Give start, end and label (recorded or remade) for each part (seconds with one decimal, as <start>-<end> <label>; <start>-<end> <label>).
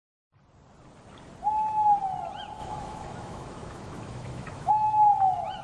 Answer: 0.0-2.6 recorded; 2.6-4.7 remade; 4.7-5.6 recorded